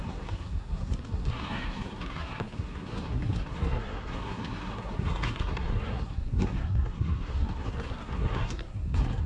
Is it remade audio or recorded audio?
remade